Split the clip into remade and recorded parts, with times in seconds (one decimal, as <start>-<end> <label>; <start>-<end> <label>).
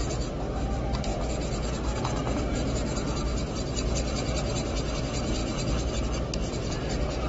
0.0-7.3 recorded